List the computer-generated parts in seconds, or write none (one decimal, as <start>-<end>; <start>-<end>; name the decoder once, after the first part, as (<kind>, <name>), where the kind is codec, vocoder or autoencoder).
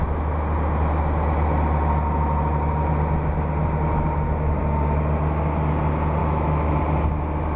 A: 6.2-6.8 (autoencoder, DAC-VAE)